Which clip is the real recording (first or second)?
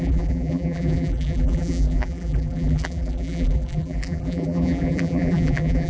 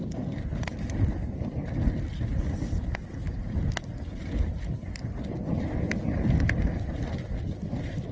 second